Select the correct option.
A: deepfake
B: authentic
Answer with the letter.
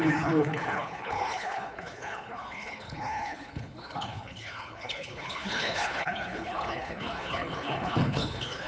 A